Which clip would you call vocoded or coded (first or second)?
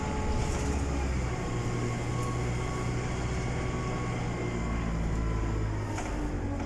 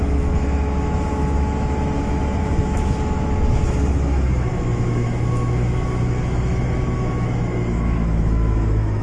second